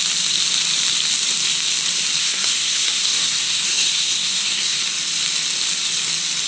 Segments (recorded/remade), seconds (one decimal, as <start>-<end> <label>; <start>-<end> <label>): 0.0-2.2 recorded; 2.2-4.8 remade; 4.8-6.5 recorded